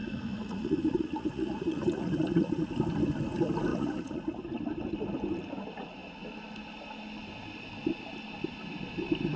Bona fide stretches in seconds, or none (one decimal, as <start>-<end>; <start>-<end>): 2.7-3.7; 4.4-9.4

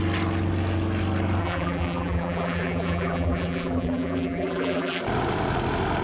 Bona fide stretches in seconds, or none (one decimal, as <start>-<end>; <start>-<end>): 0.0-1.4; 5.0-6.0

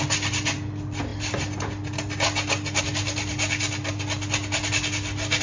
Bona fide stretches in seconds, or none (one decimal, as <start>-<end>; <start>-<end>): 0.0-5.4

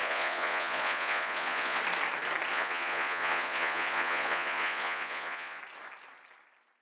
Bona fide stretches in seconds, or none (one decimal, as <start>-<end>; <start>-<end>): 1.8-2.5; 5.6-6.8

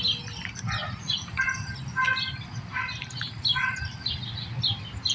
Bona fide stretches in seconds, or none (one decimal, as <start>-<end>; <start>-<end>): 0.0-0.8; 1.4-5.1

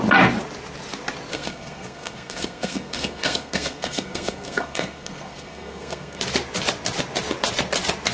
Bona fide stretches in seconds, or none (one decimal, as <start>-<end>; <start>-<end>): 0.0-1.3; 6.2-8.1

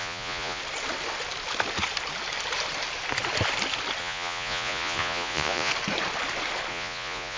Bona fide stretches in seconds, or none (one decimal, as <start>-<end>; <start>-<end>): 0.6-4.0; 5.7-6.7

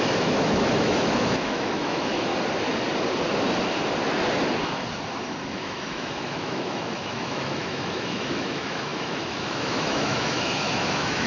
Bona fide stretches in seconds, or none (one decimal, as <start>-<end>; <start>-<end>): 2.3-5.5